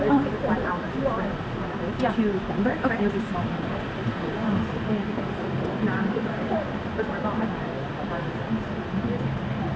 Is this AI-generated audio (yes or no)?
no